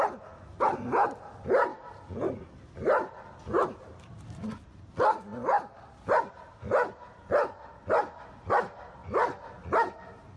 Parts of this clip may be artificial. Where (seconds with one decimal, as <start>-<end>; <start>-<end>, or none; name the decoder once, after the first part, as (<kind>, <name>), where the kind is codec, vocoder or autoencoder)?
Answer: 1.7-4.2 (vocoder, BigVGAN v2); 9.0-9.5